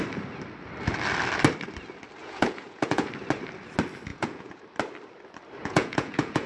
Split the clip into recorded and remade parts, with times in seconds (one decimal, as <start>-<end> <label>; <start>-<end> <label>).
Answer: 0.0-2.2 recorded; 2.2-3.1 remade; 3.1-4.1 recorded; 4.1-4.6 remade; 4.6-5.6 recorded; 5.6-6.5 remade